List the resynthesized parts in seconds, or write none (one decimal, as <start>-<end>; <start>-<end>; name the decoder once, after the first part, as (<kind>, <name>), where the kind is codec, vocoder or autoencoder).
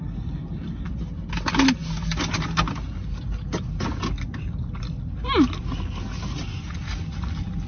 none